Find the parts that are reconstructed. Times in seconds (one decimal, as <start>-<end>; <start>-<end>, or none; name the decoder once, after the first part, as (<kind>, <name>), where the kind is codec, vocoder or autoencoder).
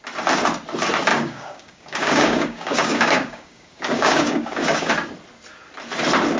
1.1-4.9 (codec, DAC)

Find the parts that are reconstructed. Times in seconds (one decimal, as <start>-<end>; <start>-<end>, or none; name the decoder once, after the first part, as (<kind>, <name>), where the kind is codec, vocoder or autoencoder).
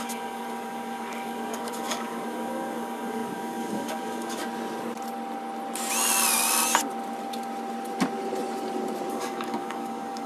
0.0-4.4 (codec, DAC); 9.1-10.3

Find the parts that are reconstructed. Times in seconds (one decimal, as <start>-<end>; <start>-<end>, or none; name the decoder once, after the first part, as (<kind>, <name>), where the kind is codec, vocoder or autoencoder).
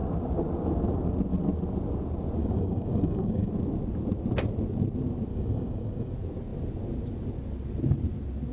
2.4-3.5 (codec, DAC); 5.3-6.1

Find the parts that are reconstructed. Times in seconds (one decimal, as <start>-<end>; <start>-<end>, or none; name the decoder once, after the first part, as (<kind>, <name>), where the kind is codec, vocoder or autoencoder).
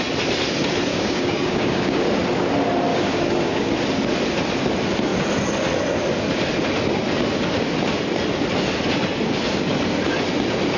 0.9-2.0 (codec, DAC); 2.9-3.7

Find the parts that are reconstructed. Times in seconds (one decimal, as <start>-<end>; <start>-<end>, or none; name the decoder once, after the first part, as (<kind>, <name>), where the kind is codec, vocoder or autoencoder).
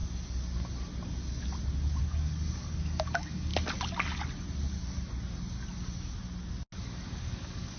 2.0-3.5 (codec, DAC); 6.8-7.8